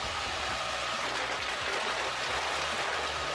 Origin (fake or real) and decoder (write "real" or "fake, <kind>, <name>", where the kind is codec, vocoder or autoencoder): real